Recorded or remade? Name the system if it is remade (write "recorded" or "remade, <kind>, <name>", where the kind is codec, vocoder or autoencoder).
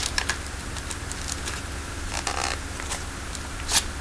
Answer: remade, vocoder, BigVGAN v2